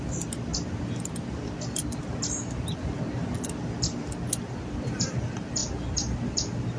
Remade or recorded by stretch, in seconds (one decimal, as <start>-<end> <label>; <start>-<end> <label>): 0.0-6.8 recorded